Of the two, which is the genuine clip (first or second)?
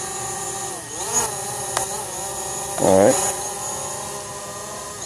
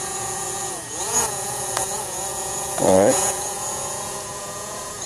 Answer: first